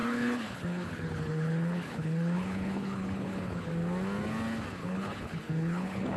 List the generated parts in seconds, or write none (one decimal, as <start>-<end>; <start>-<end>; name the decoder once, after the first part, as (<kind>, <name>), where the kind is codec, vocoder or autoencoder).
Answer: 0.0-3.7 (codec, HILCodec); 4.8-6.2

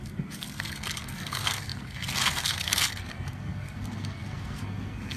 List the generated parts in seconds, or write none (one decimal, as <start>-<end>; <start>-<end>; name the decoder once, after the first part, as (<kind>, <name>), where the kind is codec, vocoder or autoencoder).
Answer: 0.0-5.2 (codec, SNAC)

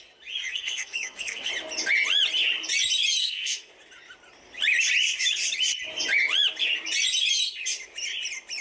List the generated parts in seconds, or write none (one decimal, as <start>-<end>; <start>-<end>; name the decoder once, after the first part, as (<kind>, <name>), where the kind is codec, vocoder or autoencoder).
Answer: 0.5-1.5 (codec, SNAC); 3.2-3.7

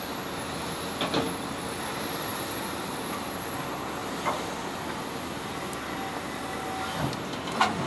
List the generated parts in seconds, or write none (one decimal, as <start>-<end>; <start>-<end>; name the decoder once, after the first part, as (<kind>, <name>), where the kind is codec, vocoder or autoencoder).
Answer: 2.3-3.5 (vocoder, BigVGAN v2); 4.0-4.8

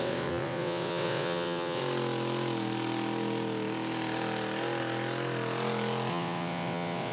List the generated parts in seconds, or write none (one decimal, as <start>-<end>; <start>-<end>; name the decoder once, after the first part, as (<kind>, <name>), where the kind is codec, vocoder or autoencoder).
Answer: 0.0-1.8 (vocoder, WaveNeXt); 6.1-7.1